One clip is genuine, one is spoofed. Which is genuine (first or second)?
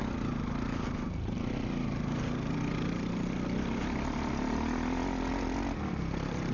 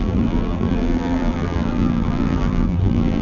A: first